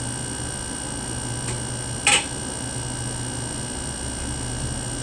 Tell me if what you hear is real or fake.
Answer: real